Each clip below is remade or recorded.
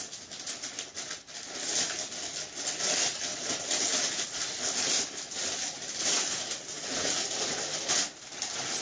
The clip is recorded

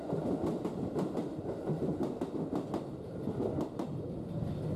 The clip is recorded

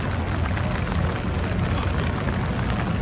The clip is recorded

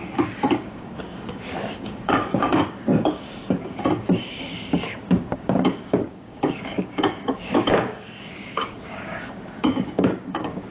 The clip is remade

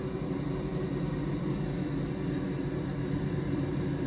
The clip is recorded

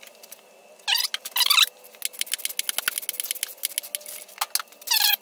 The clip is recorded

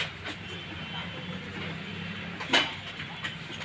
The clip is recorded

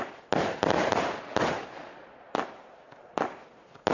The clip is recorded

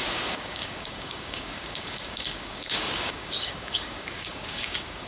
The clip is remade